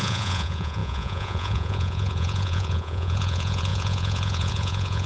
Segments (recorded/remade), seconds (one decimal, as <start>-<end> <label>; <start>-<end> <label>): 0.0-5.1 remade